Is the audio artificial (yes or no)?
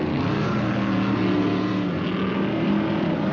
no